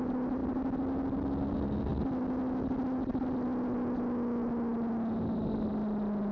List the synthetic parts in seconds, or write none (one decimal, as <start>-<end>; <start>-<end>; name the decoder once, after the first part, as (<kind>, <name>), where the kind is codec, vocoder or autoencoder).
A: none